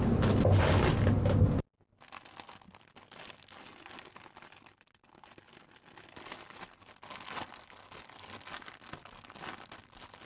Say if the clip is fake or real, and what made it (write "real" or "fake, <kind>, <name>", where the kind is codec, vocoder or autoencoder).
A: real